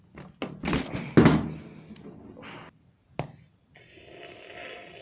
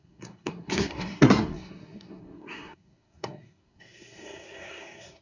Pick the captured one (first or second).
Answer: first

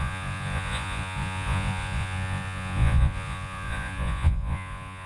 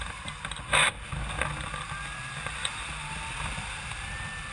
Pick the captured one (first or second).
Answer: second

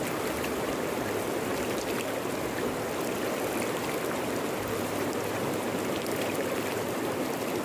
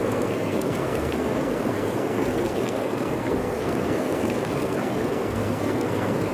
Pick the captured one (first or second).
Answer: first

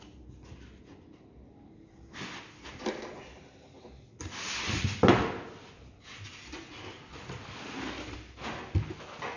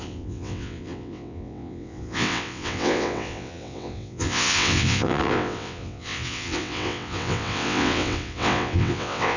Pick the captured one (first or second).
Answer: first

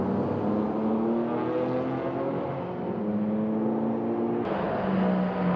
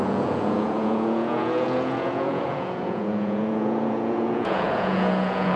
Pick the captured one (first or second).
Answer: first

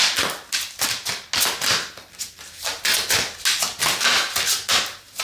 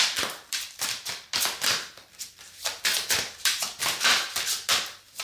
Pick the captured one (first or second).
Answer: first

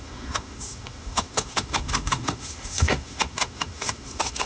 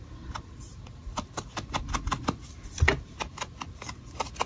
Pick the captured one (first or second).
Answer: second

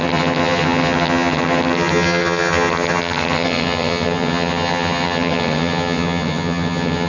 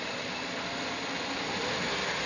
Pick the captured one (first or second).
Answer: second